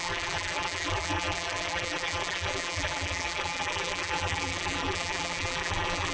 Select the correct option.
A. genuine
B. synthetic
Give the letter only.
B